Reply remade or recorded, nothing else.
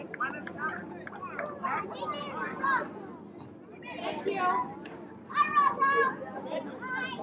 recorded